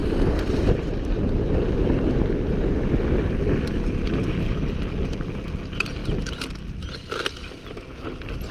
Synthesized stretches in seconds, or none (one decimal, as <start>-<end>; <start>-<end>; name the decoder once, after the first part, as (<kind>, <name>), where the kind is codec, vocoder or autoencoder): none